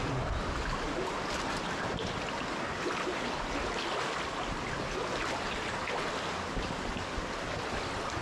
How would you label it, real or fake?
real